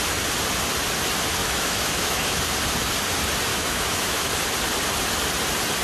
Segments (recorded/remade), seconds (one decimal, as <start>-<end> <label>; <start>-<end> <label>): 0.0-1.4 recorded; 1.4-2.4 remade; 2.4-3.5 recorded; 3.5-4.3 remade; 4.3-5.8 recorded

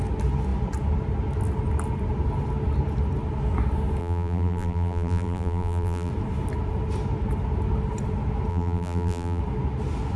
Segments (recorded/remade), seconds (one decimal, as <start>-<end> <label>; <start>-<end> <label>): 0.0-4.0 recorded; 4.0-6.1 remade; 6.1-8.5 recorded; 8.5-9.4 remade; 9.4-10.2 recorded